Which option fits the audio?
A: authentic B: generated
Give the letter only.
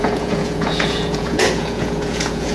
B